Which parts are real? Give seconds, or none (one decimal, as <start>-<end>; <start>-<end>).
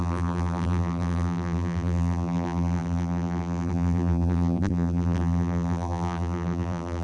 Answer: none